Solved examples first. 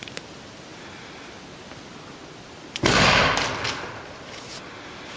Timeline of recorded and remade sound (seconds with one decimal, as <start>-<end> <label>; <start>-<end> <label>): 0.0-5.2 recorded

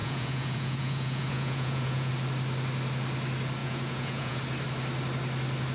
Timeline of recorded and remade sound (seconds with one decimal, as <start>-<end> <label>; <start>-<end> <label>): 0.0-2.1 remade; 2.1-3.6 recorded; 3.6-4.4 remade; 4.4-5.7 recorded

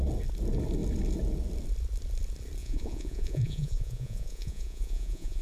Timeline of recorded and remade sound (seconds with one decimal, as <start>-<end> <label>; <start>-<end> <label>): 0.0-2.6 recorded; 2.6-5.4 remade